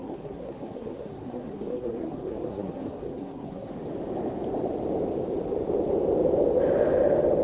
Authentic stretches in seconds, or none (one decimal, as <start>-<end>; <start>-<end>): 3.7-7.4

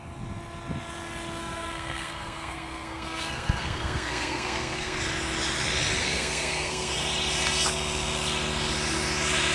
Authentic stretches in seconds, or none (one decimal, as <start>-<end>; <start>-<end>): 0.0-1.4; 5.0-6.0; 6.9-9.5

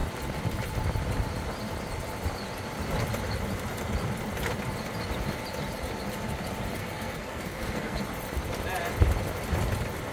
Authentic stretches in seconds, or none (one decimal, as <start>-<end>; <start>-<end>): 0.0-6.8; 8.0-10.1

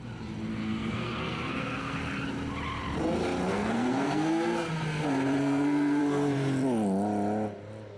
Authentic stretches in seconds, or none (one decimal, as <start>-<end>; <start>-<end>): 0.0-0.5; 2.2-3.5; 4.7-5.4; 6.0-8.0